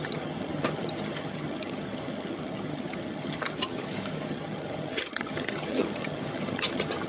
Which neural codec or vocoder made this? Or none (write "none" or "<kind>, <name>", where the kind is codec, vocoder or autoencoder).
vocoder, HiFi-GAN